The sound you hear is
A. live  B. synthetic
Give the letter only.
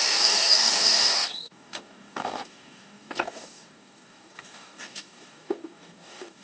B